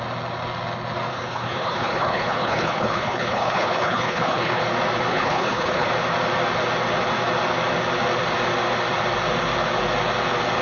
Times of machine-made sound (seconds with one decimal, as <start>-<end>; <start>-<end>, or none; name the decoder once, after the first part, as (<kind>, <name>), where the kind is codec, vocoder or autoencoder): 1.1-4.6 (codec, HILCodec); 5.1-5.9

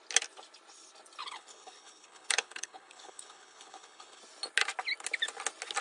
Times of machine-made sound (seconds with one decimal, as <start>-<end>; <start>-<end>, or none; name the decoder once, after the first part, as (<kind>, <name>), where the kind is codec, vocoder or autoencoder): 1.2-4.2 (codec, HILCodec)

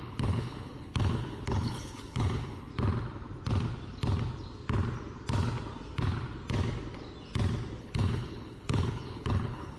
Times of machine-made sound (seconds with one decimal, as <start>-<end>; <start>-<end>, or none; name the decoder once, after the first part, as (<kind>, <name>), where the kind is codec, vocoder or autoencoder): 0.0-2.7 (codec, HILCodec); 7.8-9.8

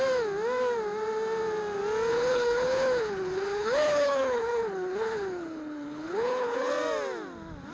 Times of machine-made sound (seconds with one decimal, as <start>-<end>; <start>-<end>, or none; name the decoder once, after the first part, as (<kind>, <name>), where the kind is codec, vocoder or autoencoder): 2.1-6.7 (codec, HILCodec)

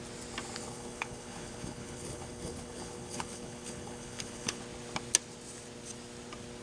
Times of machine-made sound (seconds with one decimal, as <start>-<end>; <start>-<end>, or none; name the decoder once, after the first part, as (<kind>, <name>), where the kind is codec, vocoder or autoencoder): 0.6-4.6 (codec, HILCodec)

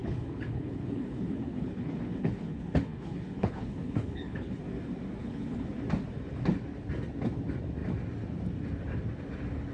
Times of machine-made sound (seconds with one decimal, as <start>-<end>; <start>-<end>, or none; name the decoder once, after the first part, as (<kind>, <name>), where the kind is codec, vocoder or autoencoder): 0.0-4.6 (codec, HILCodec); 5.2-5.7

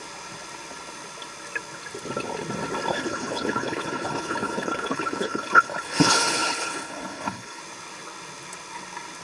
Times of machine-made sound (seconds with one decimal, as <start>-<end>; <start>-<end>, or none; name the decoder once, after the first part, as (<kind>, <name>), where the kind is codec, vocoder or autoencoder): 2.9-7.6 (codec, HILCodec)